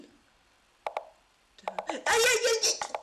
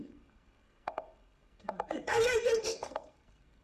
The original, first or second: first